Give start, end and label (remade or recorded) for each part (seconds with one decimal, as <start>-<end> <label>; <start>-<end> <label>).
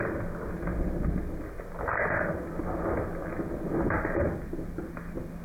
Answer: 0.0-5.4 recorded